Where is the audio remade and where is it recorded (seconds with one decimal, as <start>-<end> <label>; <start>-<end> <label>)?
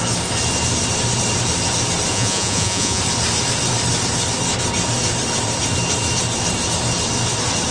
0.0-2.1 recorded; 2.1-3.0 remade; 3.0-7.7 recorded